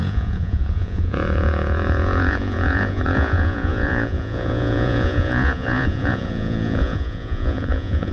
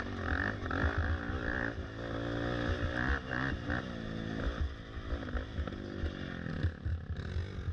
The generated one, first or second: first